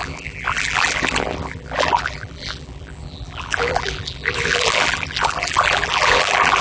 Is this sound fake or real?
fake